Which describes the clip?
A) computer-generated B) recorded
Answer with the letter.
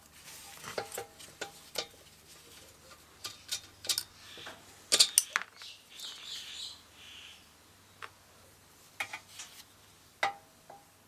B